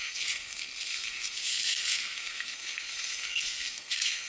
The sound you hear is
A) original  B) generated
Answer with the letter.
B